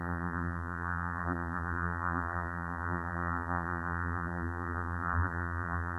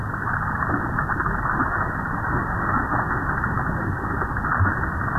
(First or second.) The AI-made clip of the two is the first